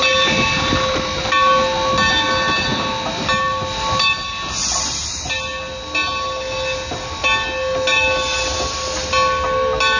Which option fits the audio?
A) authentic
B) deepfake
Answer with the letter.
A